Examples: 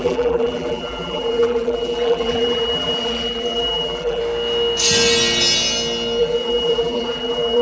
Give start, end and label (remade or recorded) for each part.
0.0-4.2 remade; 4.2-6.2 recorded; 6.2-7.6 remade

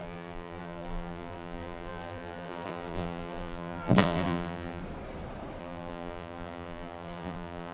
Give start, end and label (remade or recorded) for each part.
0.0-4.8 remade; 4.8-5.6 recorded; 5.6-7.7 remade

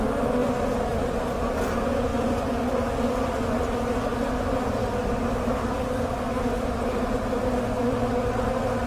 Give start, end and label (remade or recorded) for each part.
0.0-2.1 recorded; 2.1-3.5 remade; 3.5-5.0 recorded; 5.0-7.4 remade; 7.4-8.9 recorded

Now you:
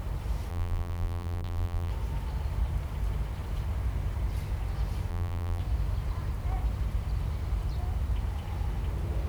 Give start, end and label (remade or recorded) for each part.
0.0-0.5 recorded; 0.5-1.9 remade; 1.9-5.1 recorded; 5.1-5.6 remade; 5.6-9.3 recorded

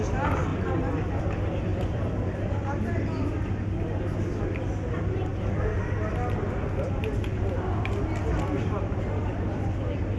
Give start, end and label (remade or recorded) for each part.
0.0-1.7 recorded; 1.7-2.5 remade; 2.5-10.2 recorded